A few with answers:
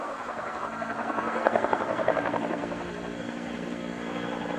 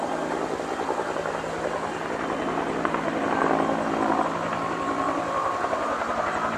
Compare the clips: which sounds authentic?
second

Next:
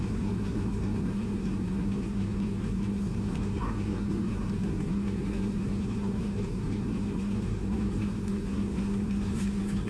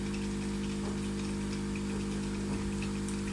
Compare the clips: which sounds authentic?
second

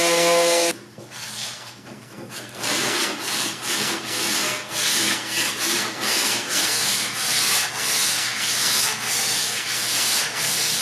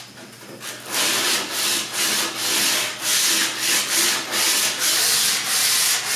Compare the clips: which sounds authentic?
second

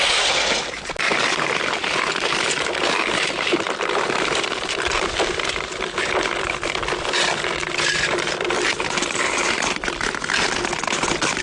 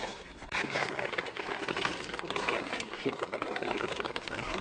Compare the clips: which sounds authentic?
first